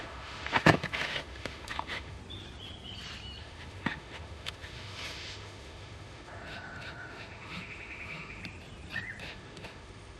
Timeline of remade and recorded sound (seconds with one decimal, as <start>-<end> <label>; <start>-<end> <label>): 0.0-2.2 remade; 2.2-3.4 recorded; 3.4-8.4 remade; 8.4-9.2 recorded; 9.2-10.2 remade

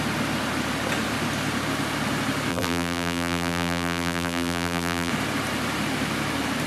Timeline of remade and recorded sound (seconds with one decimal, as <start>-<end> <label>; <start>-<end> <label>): 0.0-2.5 recorded; 2.5-5.1 remade; 5.1-6.7 recorded

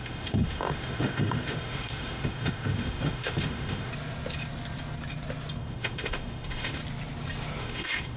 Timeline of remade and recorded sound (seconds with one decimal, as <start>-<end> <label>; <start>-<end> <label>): 0.0-3.9 remade; 3.9-5.6 recorded; 5.6-6.8 remade; 6.8-7.6 recorded; 7.6-8.2 remade

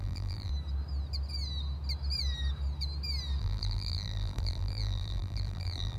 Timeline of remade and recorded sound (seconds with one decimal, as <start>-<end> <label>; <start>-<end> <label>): 0.0-0.5 remade; 0.5-3.4 recorded; 3.4-6.0 remade

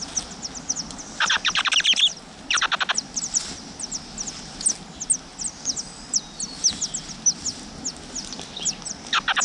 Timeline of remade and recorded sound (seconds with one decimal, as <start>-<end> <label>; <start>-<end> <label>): 0.0-9.4 recorded

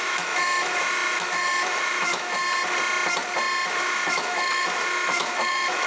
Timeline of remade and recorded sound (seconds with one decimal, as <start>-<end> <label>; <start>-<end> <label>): 0.0-2.4 remade; 2.4-3.8 recorded; 3.8-5.9 remade